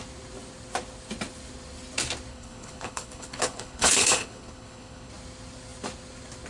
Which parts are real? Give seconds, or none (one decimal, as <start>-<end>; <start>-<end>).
0.0-2.3; 5.1-6.5